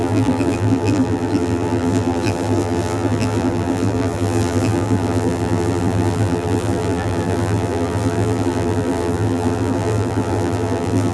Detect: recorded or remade remade